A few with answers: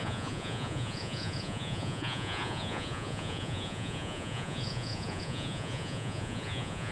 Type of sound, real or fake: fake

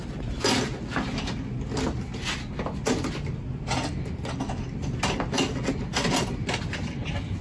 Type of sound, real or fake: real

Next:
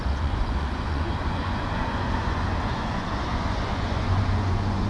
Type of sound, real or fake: fake